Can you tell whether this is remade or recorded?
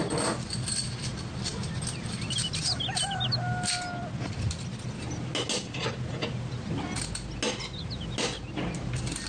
recorded